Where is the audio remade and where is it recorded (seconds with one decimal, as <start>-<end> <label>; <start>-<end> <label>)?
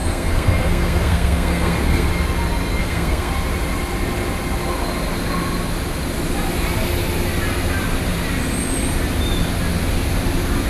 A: 0.0-2.1 remade; 2.1-2.8 recorded; 2.8-3.3 remade; 3.3-10.7 recorded